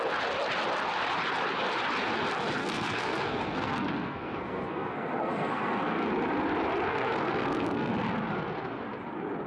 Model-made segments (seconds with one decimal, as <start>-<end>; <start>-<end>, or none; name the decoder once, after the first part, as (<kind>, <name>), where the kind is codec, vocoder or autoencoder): 2.6-6.1 (codec, SNAC); 6.9-7.9